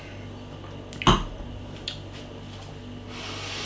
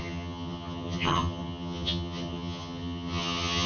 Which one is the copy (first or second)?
second